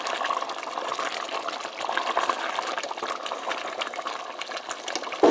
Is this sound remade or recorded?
recorded